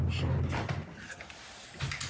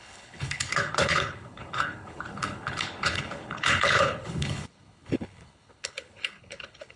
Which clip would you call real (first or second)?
first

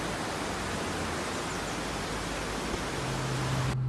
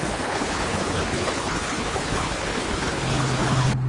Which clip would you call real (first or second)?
first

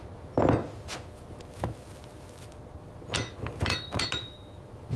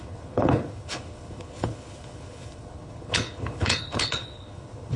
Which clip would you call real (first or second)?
first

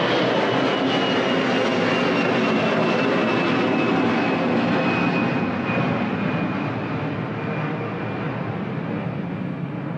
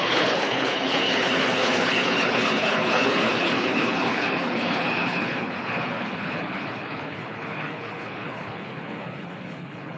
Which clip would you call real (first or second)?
first